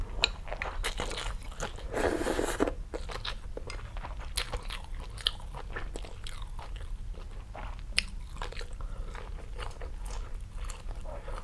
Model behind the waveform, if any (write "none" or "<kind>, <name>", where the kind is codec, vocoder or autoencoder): none